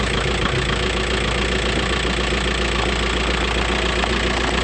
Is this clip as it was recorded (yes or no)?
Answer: yes